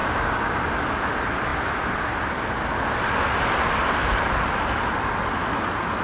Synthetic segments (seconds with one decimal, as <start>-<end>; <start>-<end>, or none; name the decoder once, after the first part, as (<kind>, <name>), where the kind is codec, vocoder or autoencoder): 0.0-0.6 (codec, DAC)